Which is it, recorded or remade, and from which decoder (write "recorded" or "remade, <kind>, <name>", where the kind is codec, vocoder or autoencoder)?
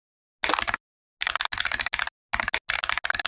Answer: recorded